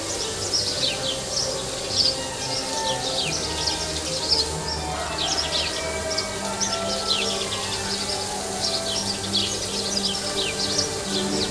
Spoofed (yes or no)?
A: no